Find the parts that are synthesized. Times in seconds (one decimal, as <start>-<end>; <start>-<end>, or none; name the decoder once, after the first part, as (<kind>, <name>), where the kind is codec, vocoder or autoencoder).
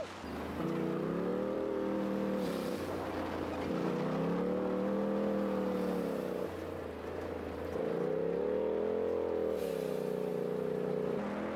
1.3-2.9 (vocoder, BigVGAN v2)